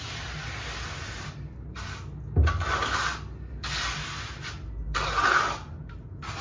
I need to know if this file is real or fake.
real